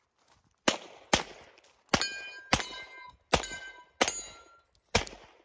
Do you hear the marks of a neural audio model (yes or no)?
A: no